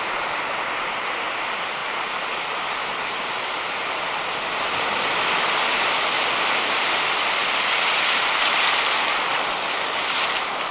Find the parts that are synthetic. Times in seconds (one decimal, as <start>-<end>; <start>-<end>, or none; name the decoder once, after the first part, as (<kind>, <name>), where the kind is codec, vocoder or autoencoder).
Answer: 0.0-1.8 (vocoder, BigVGAN v2); 7.0-10.7

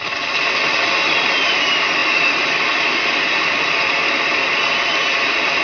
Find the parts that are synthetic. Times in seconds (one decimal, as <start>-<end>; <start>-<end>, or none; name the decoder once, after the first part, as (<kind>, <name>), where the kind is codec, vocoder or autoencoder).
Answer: none

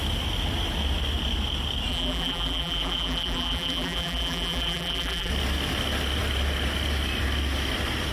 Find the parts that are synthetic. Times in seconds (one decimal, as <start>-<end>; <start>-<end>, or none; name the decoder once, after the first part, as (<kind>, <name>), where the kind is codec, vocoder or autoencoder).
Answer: 1.9-5.3 (vocoder, BigVGAN v2)

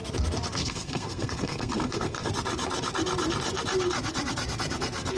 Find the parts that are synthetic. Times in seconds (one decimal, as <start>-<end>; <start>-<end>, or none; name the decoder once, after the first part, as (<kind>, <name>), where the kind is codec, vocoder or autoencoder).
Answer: 0.6-2.3 (codec, SNAC)

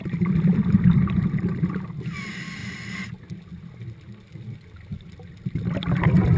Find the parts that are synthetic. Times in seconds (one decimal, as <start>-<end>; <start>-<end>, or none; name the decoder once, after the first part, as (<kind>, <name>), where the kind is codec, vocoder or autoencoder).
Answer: none

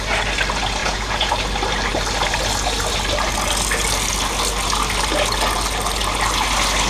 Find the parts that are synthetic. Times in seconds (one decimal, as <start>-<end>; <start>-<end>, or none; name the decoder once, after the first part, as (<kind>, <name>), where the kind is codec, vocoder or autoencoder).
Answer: 0.8-1.3 (vocoder, Vocos)